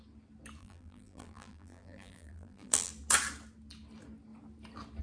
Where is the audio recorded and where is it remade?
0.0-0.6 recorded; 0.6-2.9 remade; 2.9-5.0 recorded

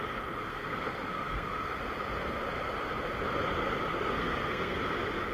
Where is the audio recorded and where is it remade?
0.0-0.5 recorded; 0.5-1.7 remade; 1.7-3.9 recorded; 3.9-4.8 remade; 4.8-5.3 recorded

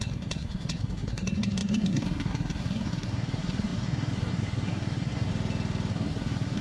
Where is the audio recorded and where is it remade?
0.0-5.3 remade; 5.3-5.9 recorded; 5.9-6.6 remade